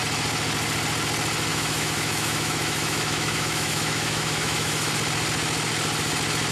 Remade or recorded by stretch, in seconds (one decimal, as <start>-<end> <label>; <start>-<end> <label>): 0.0-1.5 recorded; 1.5-4.9 remade; 4.9-6.5 recorded